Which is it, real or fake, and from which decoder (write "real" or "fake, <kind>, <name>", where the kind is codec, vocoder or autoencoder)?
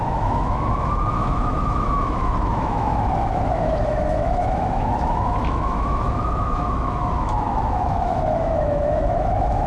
fake, autoencoder, DAC-VAE